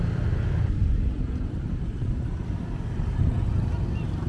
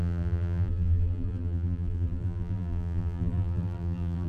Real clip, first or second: first